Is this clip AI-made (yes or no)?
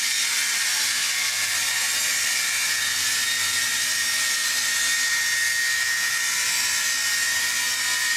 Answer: no